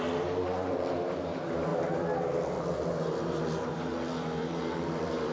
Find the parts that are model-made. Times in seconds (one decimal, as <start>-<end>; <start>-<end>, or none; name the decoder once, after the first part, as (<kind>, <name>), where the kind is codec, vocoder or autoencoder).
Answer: 0.0-5.3 (vocoder, BigVGAN v2)